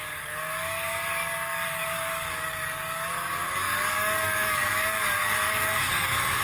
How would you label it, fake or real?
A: fake